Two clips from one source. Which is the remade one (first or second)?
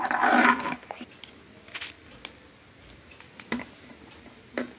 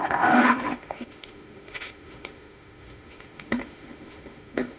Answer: second